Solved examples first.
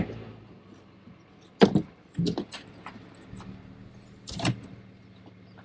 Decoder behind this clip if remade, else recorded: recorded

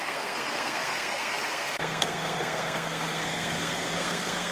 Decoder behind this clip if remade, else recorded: remade, codec, SNAC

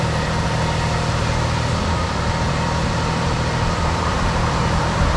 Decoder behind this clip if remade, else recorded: remade, vocoder, BigVGAN v2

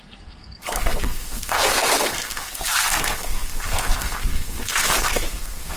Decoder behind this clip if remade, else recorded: remade, codec, SNAC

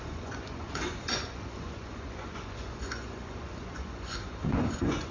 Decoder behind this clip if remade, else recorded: remade, vocoder, Vocos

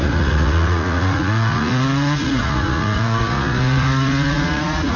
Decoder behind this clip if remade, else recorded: remade, vocoder, Vocos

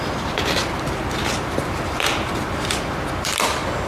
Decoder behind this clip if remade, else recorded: remade, vocoder, BigVGAN v2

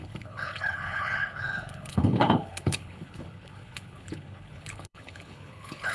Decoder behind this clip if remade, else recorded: remade, codec, HILCodec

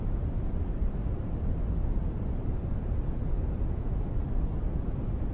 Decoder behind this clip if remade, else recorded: recorded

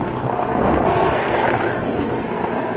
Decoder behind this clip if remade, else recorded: remade, codec, SNAC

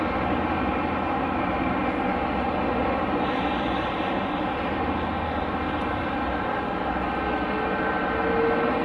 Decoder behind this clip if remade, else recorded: recorded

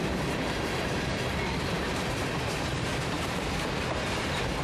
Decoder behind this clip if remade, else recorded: remade, vocoder, BigVGAN v2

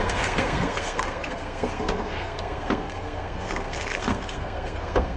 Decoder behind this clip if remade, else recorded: remade, codec, SNAC